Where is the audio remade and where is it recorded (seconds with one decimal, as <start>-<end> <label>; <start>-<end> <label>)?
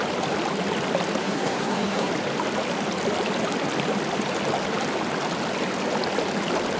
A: 0.0-1.2 recorded; 1.2-2.1 remade; 2.1-6.8 recorded